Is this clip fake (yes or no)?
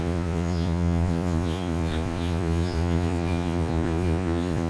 yes